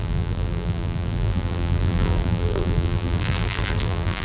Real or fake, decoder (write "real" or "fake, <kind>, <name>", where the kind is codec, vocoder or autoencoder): fake, vocoder, BigVGAN v2